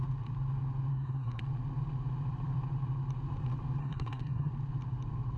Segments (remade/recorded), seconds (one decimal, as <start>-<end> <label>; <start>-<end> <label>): 0.0-0.9 recorded; 0.9-1.4 remade; 1.4-3.8 recorded; 3.8-4.5 remade; 4.5-5.4 recorded